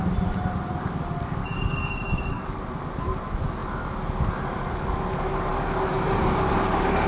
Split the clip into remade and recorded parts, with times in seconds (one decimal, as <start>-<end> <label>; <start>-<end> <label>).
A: 0.0-1.4 recorded; 1.4-2.6 remade; 2.6-7.1 recorded